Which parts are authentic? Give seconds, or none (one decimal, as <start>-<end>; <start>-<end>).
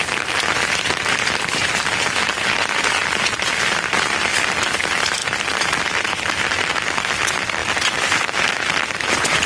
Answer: 0.0-9.5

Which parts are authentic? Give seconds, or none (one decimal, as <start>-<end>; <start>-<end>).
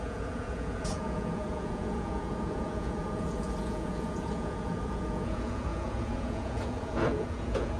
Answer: none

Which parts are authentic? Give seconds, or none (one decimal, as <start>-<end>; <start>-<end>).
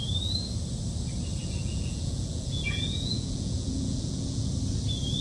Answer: 0.0-1.4; 4.5-5.2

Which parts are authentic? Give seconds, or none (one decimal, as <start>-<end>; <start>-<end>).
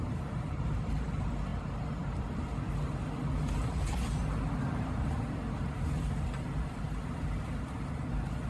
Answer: 0.0-8.5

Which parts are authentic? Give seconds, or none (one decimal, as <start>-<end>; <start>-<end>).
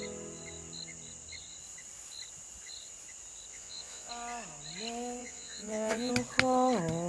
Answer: 0.0-3.5; 4.1-5.2; 6.1-7.1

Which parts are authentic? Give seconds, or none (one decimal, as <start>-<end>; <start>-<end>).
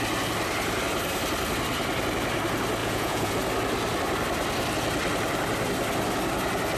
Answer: 0.0-2.8; 3.3-6.8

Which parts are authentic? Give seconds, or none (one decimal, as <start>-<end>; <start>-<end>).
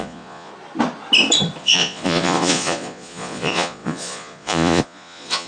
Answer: 0.5-1.6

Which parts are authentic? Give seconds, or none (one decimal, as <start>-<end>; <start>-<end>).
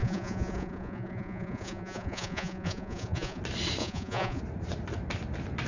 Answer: 3.4-3.8; 4.4-5.7